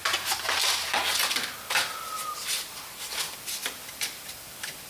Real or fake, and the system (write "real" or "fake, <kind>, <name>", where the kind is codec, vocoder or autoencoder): real